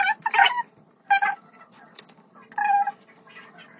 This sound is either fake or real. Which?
real